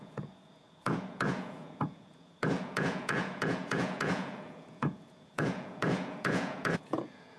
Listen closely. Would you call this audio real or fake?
fake